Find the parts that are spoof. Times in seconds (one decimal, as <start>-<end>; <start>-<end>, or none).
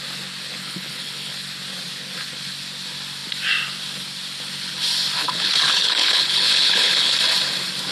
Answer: 0.6-1.3; 5.2-7.1